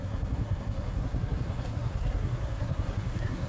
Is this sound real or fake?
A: fake